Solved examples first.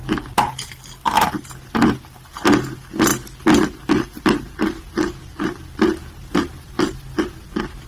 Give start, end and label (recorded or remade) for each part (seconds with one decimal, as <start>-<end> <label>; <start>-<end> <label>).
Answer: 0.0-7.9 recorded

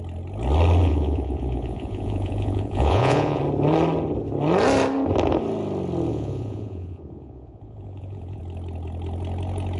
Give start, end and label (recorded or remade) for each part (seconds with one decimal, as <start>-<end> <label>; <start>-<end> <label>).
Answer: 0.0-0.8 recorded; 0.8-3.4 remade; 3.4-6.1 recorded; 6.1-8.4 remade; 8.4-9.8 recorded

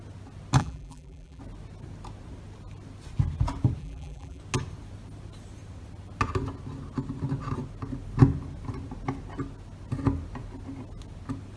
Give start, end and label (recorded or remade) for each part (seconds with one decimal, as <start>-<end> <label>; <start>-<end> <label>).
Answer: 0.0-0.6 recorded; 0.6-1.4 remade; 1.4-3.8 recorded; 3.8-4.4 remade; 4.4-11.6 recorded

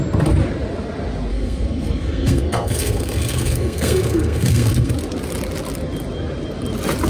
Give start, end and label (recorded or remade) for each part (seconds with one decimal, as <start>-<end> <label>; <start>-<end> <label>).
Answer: 0.0-1.3 recorded; 1.3-4.9 remade; 4.9-7.1 recorded

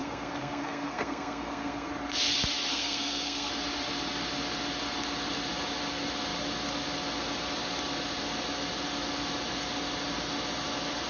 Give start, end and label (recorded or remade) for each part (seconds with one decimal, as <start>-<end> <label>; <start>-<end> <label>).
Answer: 0.0-1.9 remade; 1.9-2.7 recorded; 2.7-3.5 remade; 3.5-11.1 recorded